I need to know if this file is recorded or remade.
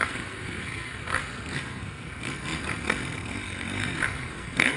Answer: remade